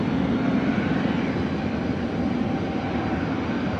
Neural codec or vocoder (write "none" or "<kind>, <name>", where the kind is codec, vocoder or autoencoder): none